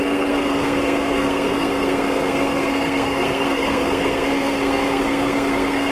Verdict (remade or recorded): remade